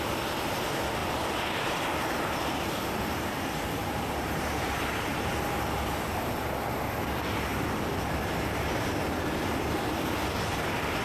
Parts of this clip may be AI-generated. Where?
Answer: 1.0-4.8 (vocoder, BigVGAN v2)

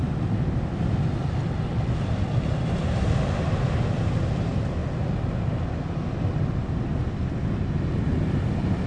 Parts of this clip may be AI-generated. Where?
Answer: 2.6-4.8 (vocoder, BigVGAN v2); 8.5-8.9

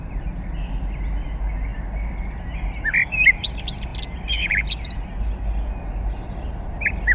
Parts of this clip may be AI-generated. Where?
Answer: none

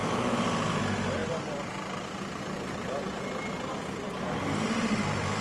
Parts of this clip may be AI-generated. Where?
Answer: 0.7-1.2 (vocoder, BigVGAN v2); 4.4-5.4